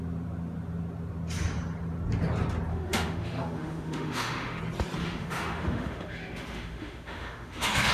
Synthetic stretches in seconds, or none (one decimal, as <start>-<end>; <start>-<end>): 2.7-4.6; 5.0-7.9